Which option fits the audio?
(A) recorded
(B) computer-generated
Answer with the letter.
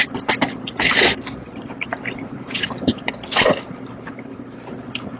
B